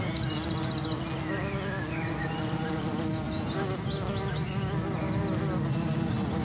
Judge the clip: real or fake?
real